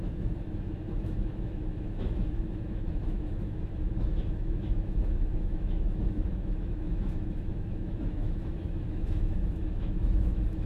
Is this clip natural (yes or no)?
no